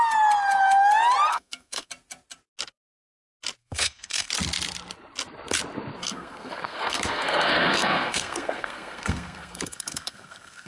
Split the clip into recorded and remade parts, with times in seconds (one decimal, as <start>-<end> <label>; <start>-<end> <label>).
0.0-1.3 recorded; 1.3-1.9 remade; 1.9-3.6 recorded; 3.6-4.3 remade; 4.3-6.0 recorded; 6.0-10.7 remade